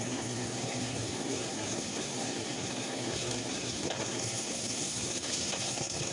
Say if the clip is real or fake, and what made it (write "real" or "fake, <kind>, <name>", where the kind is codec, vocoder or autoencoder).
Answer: fake, codec, SNAC